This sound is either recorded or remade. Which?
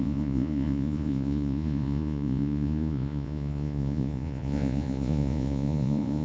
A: remade